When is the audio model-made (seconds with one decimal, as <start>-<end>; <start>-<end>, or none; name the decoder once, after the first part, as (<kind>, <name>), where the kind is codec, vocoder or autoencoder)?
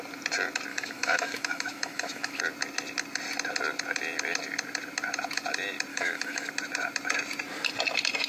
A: 0.7-2.4 (autoencoder, DAC-VAE); 5.9-6.5